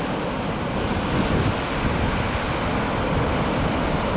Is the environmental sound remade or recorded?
recorded